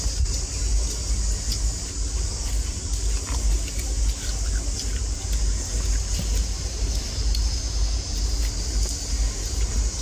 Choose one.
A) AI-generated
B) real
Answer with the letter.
B